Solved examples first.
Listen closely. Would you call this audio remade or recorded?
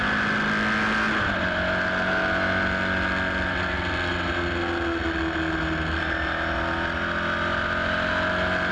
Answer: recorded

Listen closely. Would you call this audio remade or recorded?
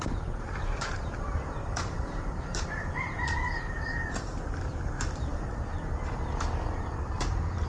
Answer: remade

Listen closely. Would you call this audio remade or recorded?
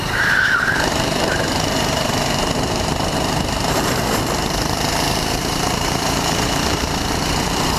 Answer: remade